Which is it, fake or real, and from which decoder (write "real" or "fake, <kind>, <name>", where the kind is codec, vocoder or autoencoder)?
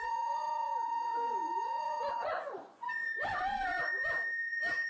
fake, vocoder, Vocos